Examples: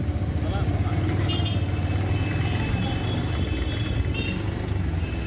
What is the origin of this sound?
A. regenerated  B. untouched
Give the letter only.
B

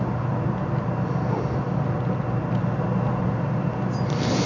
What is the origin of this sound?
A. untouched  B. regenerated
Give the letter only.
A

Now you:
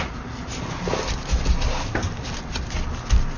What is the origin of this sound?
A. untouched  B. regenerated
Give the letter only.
A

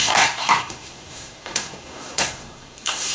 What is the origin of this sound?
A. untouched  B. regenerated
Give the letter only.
B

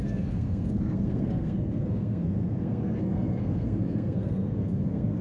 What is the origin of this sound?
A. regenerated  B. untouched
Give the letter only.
A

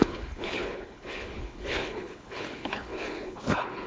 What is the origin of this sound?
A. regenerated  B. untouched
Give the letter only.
A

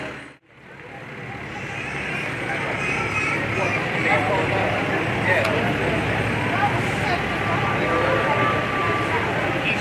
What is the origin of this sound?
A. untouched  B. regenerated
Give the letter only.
A